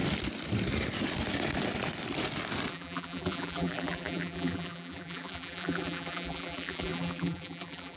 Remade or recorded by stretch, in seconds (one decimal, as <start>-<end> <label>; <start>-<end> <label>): 0.0-2.7 recorded; 2.7-8.0 remade

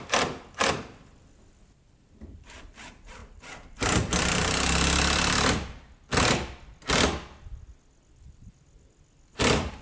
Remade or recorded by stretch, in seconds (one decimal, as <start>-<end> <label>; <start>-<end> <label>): 0.0-3.2 remade; 3.2-7.4 recorded; 7.4-9.8 remade

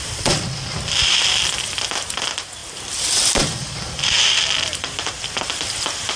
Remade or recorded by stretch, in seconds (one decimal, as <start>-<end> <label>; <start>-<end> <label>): 0.0-6.2 recorded

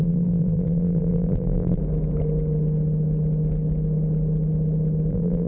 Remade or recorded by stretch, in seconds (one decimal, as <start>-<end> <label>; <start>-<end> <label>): 0.0-1.8 remade; 1.8-5.1 recorded; 5.1-5.5 remade

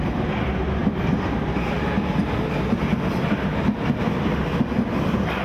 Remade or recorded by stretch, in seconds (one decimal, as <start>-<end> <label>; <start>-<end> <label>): 0.0-5.4 recorded

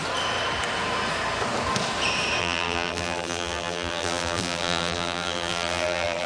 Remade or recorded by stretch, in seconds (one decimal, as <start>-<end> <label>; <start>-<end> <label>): 0.0-2.4 recorded; 2.4-6.3 remade